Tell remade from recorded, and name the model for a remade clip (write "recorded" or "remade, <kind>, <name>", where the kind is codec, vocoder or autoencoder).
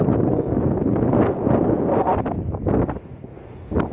recorded